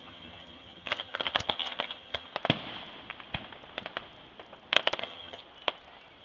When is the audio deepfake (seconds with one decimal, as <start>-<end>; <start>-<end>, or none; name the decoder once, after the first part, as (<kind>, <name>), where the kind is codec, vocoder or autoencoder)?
0.0-2.3 (vocoder, HiFi-GAN); 5.0-5.4